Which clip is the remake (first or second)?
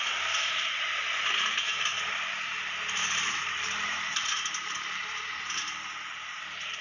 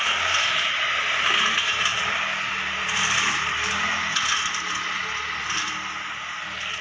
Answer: first